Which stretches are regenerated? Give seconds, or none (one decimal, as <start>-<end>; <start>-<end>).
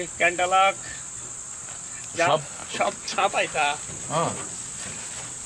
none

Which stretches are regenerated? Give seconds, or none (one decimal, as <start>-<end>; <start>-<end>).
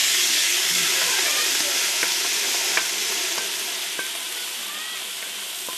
0.0-0.8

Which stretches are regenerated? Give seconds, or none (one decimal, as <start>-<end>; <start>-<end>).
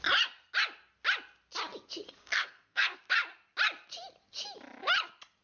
2.2-3.0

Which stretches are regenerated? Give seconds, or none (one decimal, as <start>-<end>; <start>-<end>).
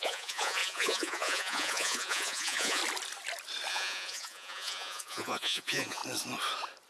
0.0-2.8; 3.7-6.0